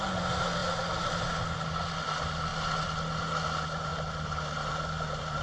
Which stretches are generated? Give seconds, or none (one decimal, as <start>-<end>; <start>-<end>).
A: none